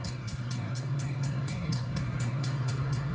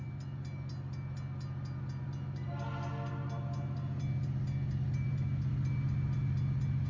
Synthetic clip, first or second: first